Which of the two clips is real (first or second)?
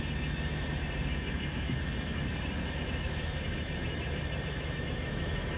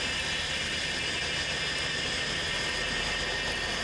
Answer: second